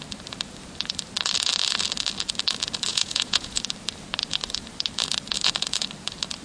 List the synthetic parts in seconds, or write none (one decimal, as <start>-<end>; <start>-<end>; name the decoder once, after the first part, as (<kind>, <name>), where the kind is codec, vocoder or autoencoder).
2.9-3.6 (vocoder, Vocos)